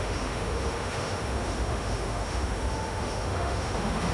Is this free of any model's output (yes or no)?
no